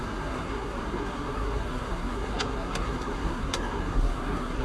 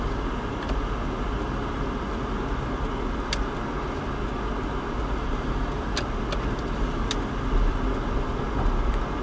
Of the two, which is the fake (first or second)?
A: first